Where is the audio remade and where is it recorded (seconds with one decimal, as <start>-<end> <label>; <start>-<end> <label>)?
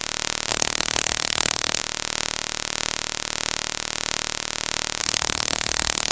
0.0-0.5 recorded; 0.5-1.8 remade; 1.8-5.0 recorded; 5.0-6.1 remade